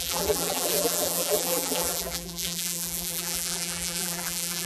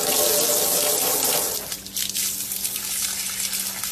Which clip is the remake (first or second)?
first